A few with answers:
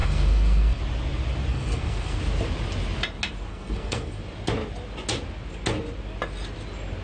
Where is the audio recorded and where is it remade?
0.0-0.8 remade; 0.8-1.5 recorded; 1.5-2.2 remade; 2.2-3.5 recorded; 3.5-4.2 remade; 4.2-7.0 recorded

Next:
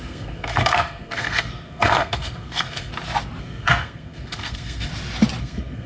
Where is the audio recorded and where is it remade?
0.0-2.9 remade; 2.9-3.4 recorded; 3.4-4.9 remade; 4.9-5.4 recorded; 5.4-5.9 remade

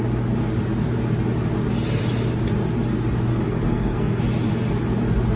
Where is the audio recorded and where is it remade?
0.0-3.3 recorded; 3.3-4.2 remade; 4.2-5.4 recorded

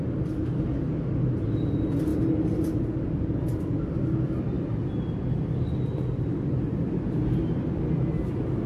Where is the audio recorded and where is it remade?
0.0-8.7 recorded

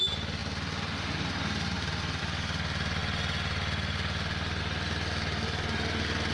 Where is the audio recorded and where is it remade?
0.0-6.3 recorded